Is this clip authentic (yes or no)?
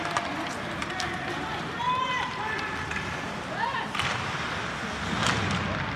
yes